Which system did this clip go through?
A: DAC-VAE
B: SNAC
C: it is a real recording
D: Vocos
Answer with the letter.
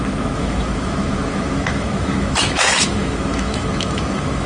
A